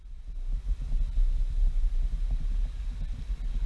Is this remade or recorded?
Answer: recorded